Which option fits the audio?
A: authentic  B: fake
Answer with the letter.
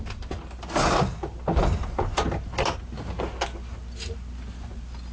A